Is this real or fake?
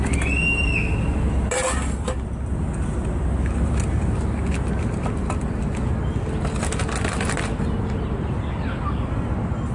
real